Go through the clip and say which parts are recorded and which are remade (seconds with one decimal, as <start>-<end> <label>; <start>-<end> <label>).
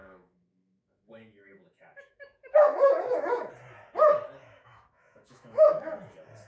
0.0-3.5 remade; 3.5-4.4 recorded; 4.4-5.9 remade; 5.9-6.5 recorded